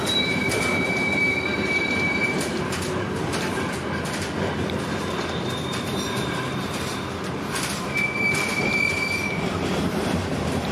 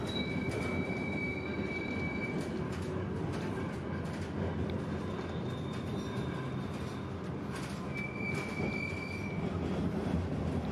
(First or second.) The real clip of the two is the second